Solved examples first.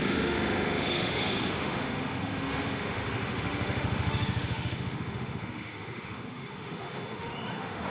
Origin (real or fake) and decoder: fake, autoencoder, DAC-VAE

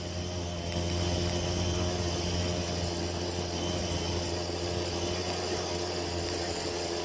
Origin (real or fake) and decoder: real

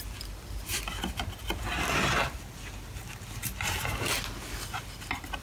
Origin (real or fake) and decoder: real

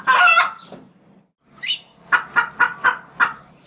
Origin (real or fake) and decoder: real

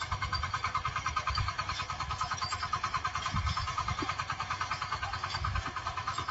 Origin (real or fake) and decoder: fake, autoencoder, DAC-VAE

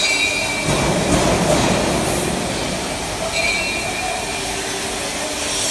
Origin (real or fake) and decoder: real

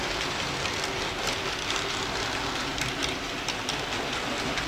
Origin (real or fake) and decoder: real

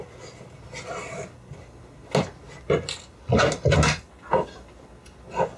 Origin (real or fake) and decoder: real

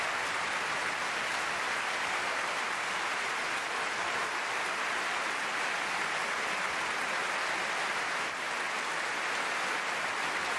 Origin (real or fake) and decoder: real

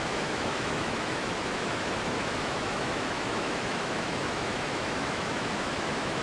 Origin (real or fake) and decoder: fake, autoencoder, DAC-VAE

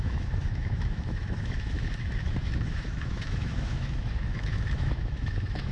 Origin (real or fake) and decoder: fake, autoencoder, DAC-VAE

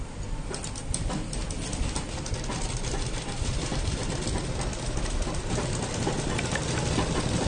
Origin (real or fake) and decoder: real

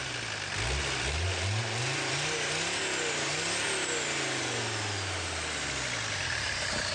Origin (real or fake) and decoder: real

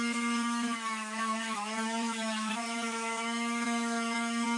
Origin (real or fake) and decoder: fake, autoencoder, DAC-VAE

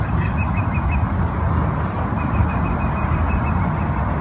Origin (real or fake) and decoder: real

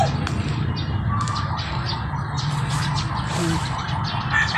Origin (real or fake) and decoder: real